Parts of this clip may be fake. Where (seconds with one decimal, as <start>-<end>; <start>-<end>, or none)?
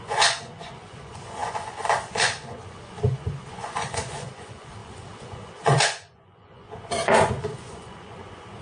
0.0-8.6